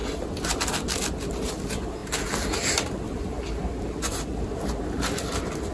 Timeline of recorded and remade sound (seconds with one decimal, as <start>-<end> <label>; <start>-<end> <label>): 0.0-5.7 recorded